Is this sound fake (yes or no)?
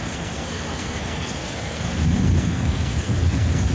yes